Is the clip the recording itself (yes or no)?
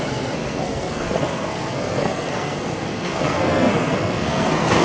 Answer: no